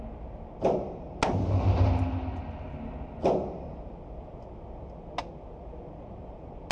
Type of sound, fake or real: real